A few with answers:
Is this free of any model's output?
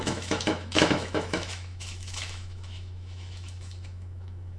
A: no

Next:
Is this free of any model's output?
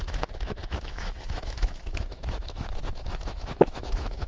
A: no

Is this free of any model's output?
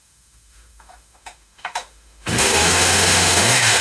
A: no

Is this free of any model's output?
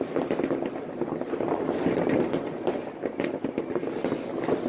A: yes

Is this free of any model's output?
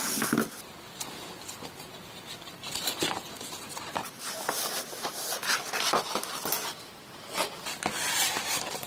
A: yes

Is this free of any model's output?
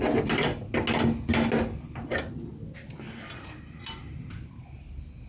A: yes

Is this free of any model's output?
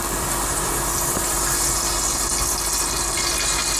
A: yes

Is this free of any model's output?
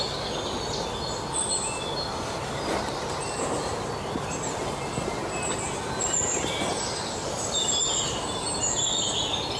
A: yes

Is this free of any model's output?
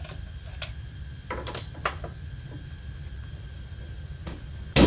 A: yes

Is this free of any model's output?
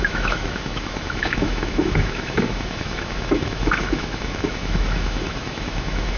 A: no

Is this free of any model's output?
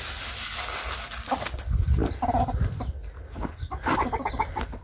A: yes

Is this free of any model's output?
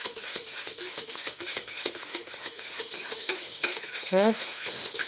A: no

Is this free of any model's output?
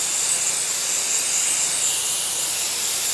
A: yes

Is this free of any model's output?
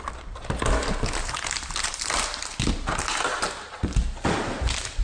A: yes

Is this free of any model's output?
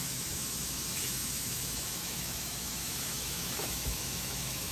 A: no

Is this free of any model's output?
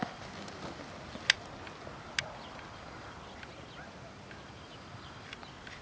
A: yes